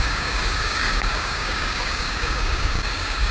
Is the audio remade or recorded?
remade